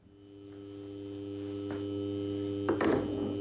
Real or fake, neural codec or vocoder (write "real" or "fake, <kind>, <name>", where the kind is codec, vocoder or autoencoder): real